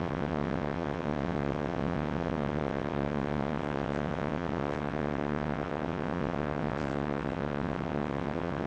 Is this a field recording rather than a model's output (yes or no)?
no